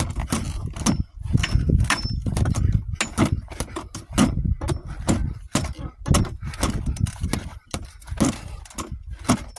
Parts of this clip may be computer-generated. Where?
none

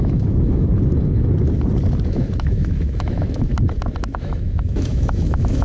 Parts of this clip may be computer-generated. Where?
0.0-0.7; 2.1-3.5; 4.0-5.6